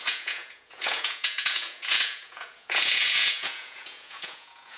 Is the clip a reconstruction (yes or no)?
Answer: yes